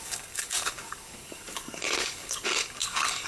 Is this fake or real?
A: fake